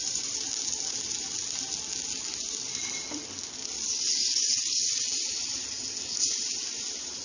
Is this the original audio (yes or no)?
yes